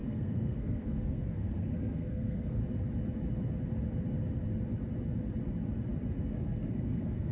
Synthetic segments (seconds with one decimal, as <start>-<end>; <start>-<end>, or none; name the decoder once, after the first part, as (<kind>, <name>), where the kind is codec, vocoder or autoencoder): 0.0-2.6 (codec, SNAC); 6.2-7.3